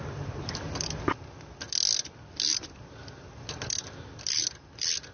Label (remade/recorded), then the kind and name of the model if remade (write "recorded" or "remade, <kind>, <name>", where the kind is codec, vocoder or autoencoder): recorded